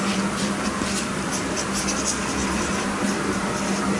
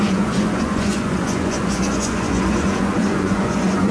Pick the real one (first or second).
first